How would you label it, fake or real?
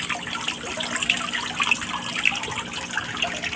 real